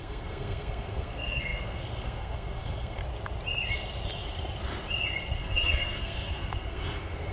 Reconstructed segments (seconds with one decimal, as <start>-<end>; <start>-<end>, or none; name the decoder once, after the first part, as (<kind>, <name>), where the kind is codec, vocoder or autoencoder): 0.0-3.0 (codec, SNAC); 5.4-7.3